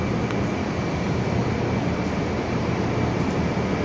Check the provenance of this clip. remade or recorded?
recorded